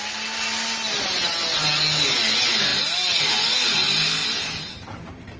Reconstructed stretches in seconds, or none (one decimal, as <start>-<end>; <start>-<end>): 4.2-5.4